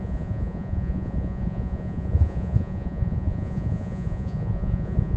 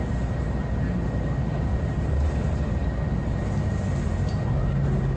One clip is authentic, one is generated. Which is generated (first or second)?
first